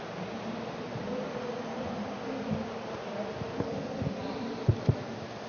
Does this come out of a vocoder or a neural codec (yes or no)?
no